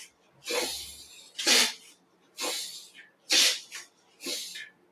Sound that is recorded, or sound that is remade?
recorded